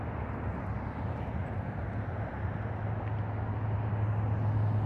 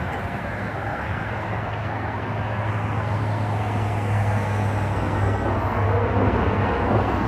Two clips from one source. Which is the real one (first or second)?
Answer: first